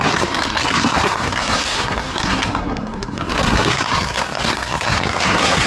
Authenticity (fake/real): fake